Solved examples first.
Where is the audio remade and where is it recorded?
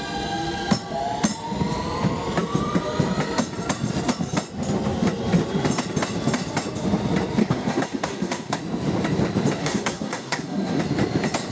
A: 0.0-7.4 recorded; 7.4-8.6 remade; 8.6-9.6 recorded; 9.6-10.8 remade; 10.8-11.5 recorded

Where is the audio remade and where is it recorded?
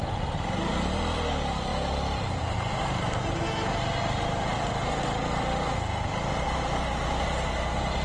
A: 0.0-8.0 recorded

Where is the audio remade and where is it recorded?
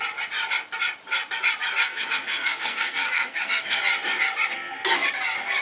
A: 0.0-1.8 recorded; 1.8-3.8 remade; 3.8-5.6 recorded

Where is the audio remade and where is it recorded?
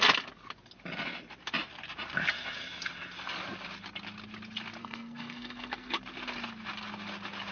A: 0.0-4.8 recorded; 4.8-6.0 remade; 6.0-7.5 recorded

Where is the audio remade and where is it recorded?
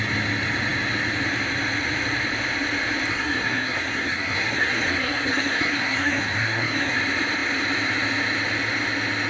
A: 0.0-3.1 recorded; 3.1-7.0 remade; 7.0-9.3 recorded